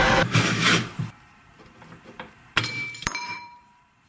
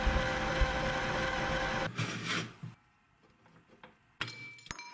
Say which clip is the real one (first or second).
second